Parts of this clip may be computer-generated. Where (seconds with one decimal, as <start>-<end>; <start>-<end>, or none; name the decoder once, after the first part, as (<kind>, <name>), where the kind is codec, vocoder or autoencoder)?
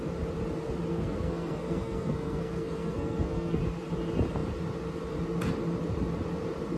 0.9-3.6 (codec, SNAC)